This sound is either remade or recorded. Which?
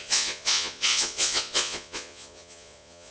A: remade